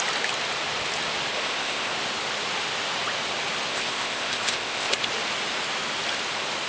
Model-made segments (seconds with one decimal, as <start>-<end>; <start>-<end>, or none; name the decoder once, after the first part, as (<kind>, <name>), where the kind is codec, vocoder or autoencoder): 1.3-1.9 (codec, ZipCodec); 3.7-5.1